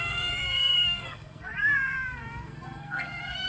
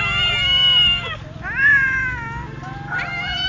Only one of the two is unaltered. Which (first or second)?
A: second